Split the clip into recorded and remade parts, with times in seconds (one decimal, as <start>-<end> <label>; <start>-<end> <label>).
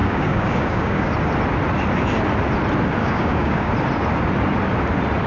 0.0-1.1 remade; 1.1-3.0 recorded; 3.0-3.7 remade; 3.7-5.3 recorded